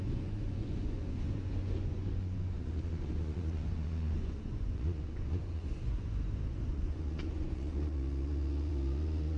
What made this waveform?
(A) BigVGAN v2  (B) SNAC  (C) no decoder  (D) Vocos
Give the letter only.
D